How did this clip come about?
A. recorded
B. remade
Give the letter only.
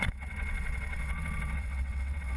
B